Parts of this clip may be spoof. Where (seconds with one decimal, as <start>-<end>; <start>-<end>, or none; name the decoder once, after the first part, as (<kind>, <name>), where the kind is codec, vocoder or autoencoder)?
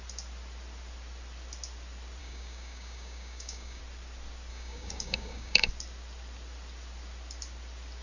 2.2-3.8 (codec, DAC); 4.5-5.7